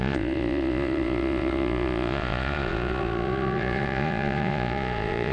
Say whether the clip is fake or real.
fake